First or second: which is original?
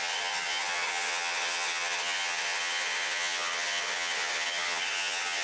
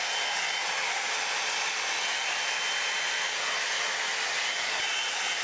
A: second